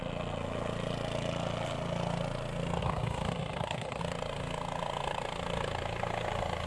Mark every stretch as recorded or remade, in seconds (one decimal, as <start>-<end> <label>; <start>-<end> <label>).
0.0-2.8 recorded; 2.8-4.0 remade; 4.0-6.7 recorded